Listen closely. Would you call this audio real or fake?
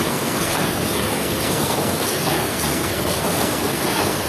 fake